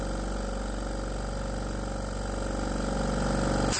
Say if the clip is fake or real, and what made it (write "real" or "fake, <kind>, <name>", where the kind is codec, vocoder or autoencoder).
real